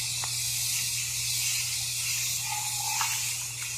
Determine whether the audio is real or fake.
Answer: real